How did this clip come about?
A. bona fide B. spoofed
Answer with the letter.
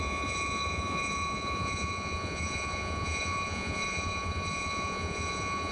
B